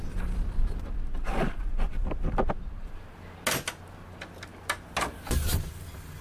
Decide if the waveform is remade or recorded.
recorded